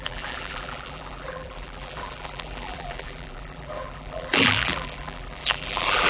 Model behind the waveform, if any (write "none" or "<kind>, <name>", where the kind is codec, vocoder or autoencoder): vocoder, BigVGAN v2